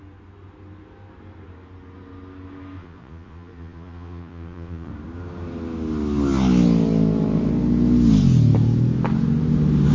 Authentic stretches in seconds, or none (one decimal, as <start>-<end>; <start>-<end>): 0.0-2.8; 4.9-9.9

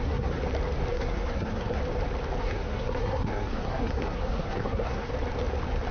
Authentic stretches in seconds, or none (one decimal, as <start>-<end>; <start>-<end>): 0.4-0.9; 1.8-2.4; 5.1-5.9

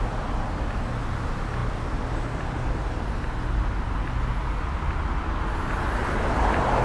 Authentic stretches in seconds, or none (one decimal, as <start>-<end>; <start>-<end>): 0.0-6.8